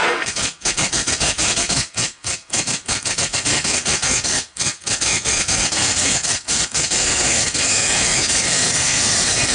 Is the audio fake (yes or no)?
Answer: yes